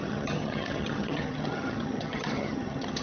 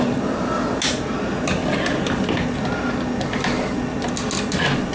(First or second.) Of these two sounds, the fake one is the first